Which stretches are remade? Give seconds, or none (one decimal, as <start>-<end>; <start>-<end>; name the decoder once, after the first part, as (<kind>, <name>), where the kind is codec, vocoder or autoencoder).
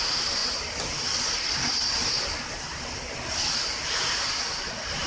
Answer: none